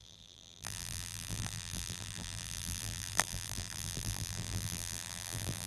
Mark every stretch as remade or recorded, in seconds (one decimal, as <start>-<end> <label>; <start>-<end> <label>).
0.0-5.7 remade